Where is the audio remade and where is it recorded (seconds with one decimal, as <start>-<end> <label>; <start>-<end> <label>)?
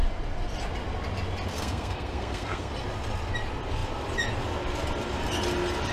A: 0.0-1.5 recorded; 1.5-2.7 remade; 2.7-5.9 recorded